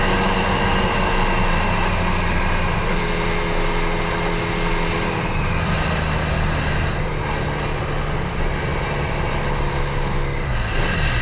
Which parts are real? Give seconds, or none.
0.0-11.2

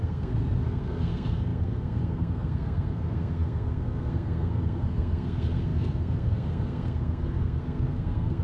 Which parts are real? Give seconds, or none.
none

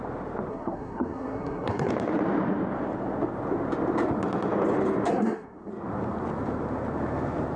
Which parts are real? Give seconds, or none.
0.0-0.5; 1.9-5.1; 5.7-7.6

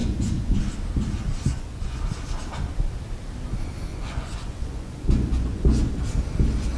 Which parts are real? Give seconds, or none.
0.6-1.5; 2.0-3.9; 5.9-6.8

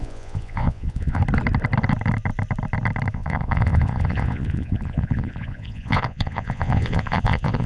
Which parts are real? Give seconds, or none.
1.2-3.1

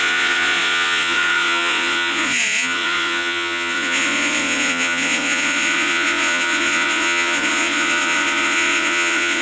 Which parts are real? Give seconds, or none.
none